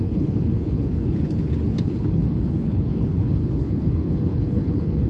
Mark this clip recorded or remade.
remade